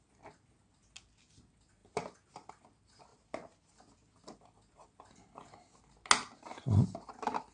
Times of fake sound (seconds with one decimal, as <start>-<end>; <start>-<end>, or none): none